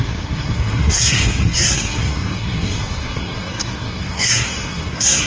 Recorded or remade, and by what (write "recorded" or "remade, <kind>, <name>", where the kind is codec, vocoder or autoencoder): remade, codec, SNAC